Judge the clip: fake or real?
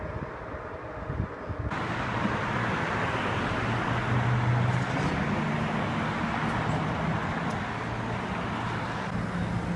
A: real